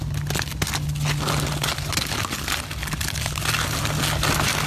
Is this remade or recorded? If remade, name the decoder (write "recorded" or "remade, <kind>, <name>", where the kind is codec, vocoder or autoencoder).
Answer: recorded